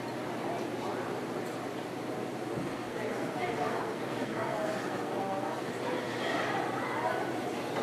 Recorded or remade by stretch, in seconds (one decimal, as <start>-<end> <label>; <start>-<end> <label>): 0.0-2.6 recorded; 2.6-5.7 remade; 5.7-7.8 recorded